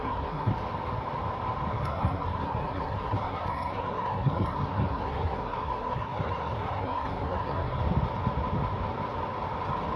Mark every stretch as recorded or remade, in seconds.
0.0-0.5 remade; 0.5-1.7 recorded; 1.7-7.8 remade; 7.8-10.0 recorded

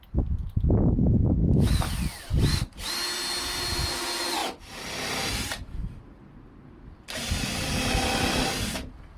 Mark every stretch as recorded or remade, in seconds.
0.0-1.4 recorded; 1.4-1.9 remade; 1.9-9.2 recorded

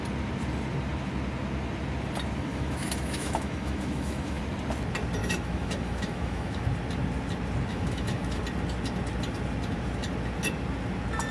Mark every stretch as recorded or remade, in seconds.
0.0-2.5 recorded; 2.5-4.4 remade; 4.4-5.2 recorded; 5.2-6.6 remade; 6.6-7.7 recorded; 7.7-8.4 remade; 8.4-11.3 recorded

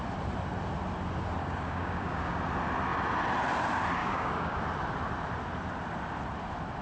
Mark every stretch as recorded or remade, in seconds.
0.0-1.4 recorded; 1.4-2.4 remade; 2.4-4.0 recorded; 4.0-4.6 remade; 4.6-6.8 recorded